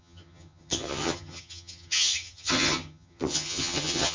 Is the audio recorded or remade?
remade